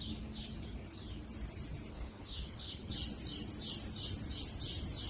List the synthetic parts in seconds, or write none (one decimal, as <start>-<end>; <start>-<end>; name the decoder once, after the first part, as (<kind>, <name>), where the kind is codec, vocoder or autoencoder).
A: 1.9-2.9 (codec, HILCodec)